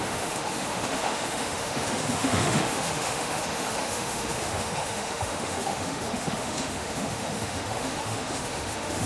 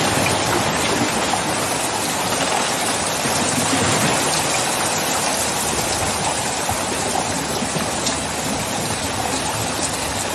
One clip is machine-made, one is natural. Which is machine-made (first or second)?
first